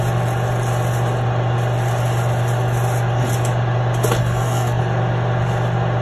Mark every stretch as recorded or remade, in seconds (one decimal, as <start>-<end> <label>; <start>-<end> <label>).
0.0-4.2 recorded; 4.2-4.8 remade; 4.8-6.0 recorded